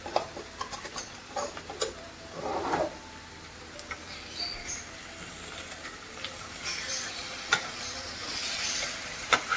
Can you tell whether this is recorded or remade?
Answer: remade